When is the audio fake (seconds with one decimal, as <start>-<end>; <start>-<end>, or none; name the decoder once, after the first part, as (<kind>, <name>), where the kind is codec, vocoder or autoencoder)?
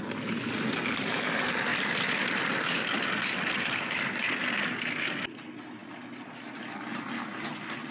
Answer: 1.7-2.3 (vocoder, BigVGAN v2)